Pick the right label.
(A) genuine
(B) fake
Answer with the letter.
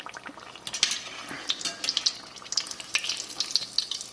A